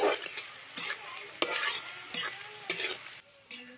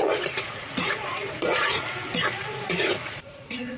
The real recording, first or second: first